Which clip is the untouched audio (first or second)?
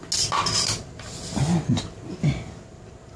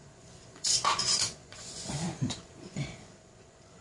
first